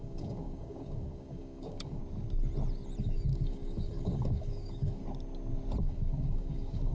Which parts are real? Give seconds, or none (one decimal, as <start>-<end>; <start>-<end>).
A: 2.0-3.0; 5.0-5.8

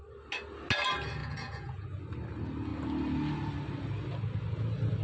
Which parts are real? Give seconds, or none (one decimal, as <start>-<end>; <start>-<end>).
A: 0.0-1.2; 2.0-5.0

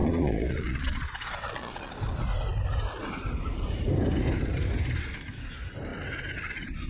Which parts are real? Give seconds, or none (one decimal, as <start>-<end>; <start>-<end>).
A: 1.9-6.9

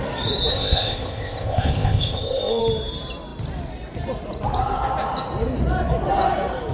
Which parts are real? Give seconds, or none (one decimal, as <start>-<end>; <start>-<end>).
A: 0.0-0.5; 2.6-6.7

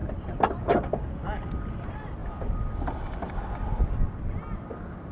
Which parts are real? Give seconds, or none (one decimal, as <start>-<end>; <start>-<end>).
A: 0.0-5.1

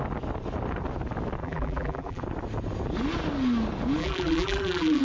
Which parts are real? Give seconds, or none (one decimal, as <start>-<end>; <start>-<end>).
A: 0.0-1.4; 2.2-4.0

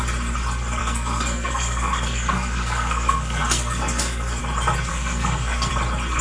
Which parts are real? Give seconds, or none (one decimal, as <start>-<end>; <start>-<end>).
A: 0.0-0.8; 4.4-4.9; 5.7-6.2

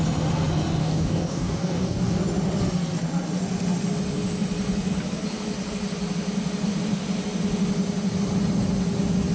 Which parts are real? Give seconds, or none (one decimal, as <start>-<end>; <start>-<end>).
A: 0.0-0.8; 2.2-9.3